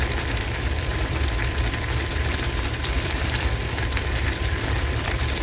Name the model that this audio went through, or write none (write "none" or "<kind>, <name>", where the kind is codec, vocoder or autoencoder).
vocoder, BigVGAN v2